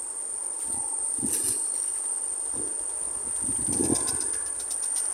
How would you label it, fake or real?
real